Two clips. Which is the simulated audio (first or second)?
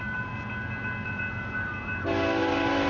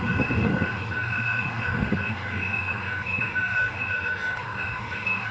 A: second